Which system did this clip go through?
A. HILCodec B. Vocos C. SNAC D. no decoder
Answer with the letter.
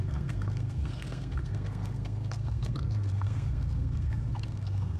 C